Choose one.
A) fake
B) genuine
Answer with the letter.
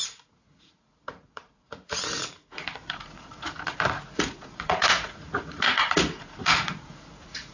A